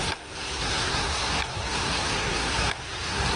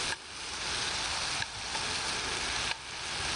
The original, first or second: second